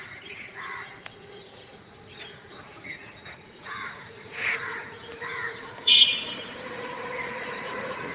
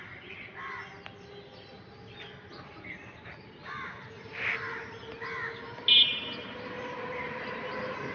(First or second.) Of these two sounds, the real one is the second